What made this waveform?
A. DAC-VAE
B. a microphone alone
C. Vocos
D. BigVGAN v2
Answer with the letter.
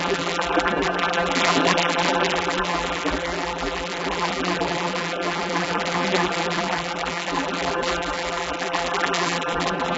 D